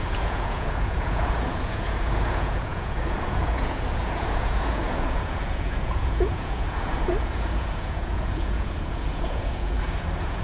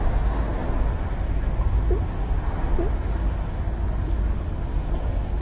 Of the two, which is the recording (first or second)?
second